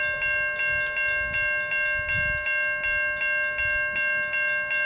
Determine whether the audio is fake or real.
real